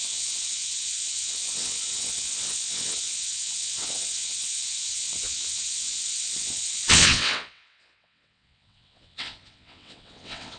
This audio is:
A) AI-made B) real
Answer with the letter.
A